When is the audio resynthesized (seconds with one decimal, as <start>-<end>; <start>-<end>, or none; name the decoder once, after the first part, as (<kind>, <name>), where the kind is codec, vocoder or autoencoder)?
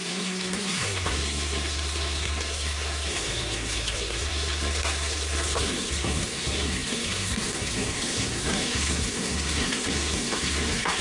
0.0-11.0 (codec, SNAC)